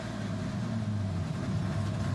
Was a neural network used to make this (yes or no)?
no